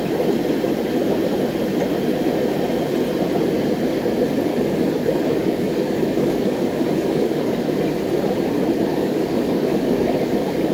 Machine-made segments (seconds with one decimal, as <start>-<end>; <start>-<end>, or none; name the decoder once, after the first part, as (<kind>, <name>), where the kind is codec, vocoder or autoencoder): 4.5-7.7 (codec, DAC); 8.9-10.7